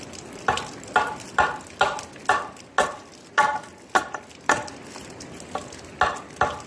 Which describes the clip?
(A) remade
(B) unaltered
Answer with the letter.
B